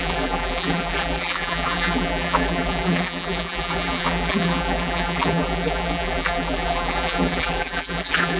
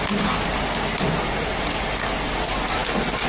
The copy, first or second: first